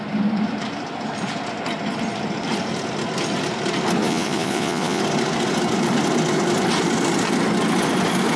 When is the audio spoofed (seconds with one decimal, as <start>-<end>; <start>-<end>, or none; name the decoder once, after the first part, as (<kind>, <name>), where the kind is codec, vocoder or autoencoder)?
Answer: 4.0-5.0 (vocoder, Vocos)